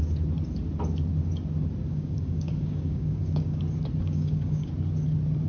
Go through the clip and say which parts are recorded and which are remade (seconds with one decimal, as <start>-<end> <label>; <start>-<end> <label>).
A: 0.0-1.9 recorded; 1.9-3.6 remade; 3.6-4.0 recorded; 4.0-4.7 remade; 4.7-5.5 recorded